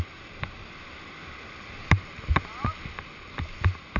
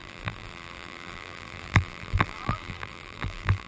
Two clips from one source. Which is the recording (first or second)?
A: first